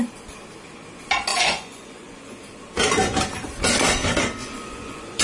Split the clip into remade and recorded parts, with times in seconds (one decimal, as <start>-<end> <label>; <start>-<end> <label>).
0.0-1.3 recorded; 1.3-2.4 remade; 2.4-4.4 recorded; 4.4-5.2 remade